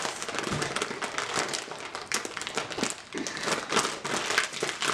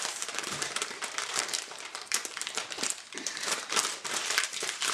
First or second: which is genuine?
first